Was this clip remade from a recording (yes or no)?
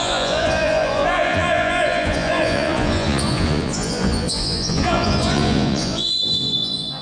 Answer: yes